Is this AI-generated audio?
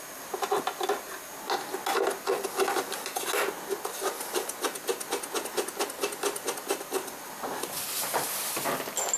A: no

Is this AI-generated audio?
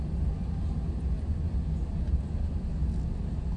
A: no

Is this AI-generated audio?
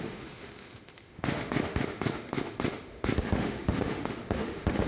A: yes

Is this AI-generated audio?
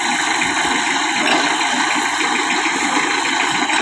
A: no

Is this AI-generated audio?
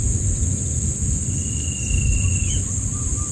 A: no